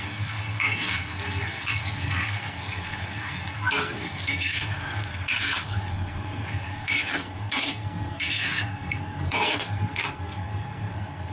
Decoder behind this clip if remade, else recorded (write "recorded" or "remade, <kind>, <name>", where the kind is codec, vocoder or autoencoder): remade, codec, SNAC